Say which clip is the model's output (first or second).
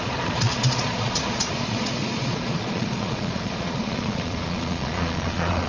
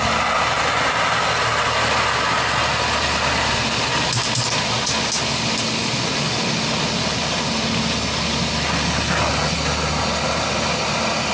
first